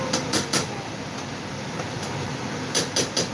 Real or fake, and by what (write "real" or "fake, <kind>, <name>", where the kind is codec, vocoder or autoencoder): real